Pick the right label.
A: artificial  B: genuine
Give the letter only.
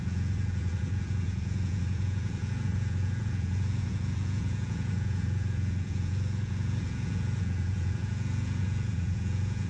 A